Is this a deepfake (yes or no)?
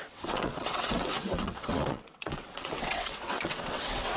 yes